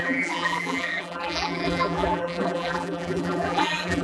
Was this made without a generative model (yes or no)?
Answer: no